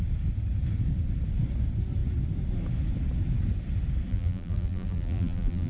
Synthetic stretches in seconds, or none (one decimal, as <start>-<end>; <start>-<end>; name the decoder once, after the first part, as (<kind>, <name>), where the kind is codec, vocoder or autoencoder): 4.1-5.7 (vocoder, BigVGAN v2)